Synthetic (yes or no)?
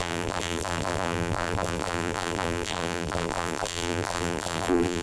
yes